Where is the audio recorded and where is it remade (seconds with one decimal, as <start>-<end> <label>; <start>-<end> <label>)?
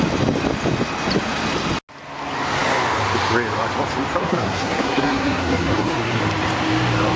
0.0-4.2 recorded; 4.2-6.2 remade; 6.2-7.2 recorded